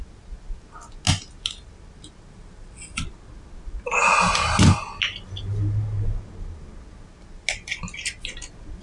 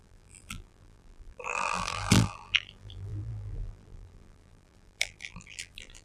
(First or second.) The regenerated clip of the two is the second